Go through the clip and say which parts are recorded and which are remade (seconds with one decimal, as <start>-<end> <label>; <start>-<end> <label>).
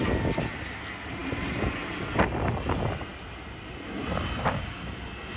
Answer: 0.0-5.4 recorded